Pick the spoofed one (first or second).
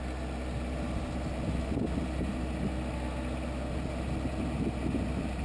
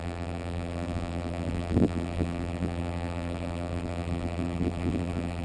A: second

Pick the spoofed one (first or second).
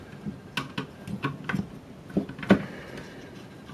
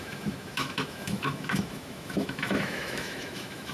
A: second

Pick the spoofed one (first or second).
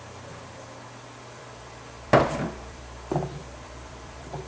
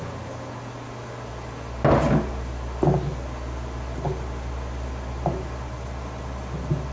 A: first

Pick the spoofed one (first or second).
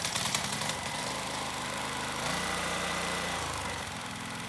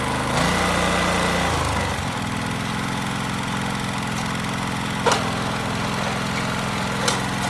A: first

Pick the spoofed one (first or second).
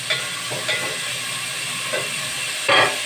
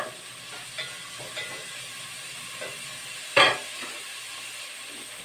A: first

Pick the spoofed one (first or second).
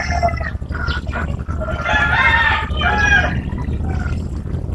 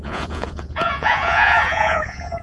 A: second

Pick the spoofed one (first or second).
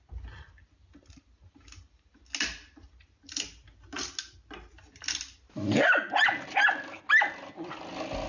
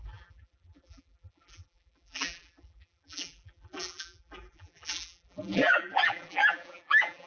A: second